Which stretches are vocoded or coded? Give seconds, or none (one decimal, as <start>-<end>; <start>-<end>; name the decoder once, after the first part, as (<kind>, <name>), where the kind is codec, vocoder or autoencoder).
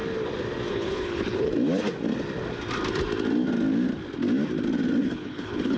0.7-1.5 (codec, HILCodec); 5.0-5.8